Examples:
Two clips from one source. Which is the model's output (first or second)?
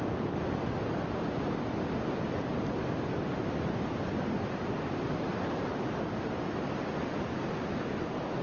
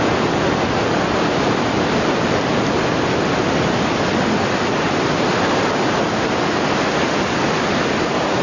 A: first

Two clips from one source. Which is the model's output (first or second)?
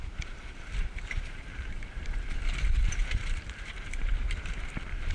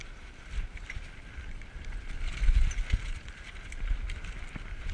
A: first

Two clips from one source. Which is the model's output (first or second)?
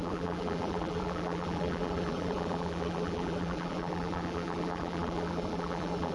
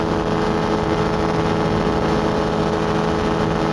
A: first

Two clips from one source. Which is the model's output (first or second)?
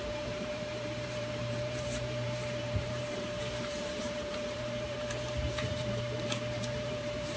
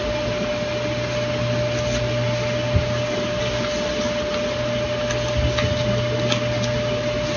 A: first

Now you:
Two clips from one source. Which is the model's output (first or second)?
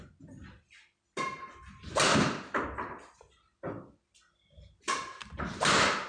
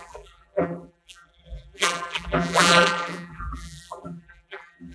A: second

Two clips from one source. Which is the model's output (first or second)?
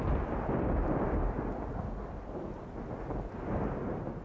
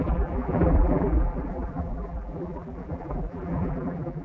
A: second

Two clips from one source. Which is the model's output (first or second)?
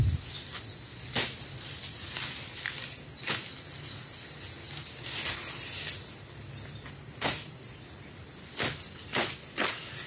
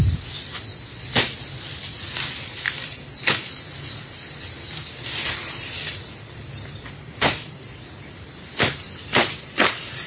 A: second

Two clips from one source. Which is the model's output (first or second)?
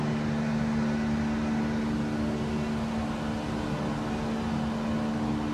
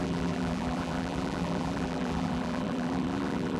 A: second